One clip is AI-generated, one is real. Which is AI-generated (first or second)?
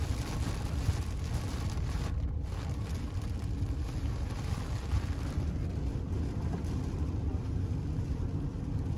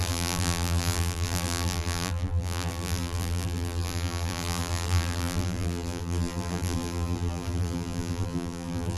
second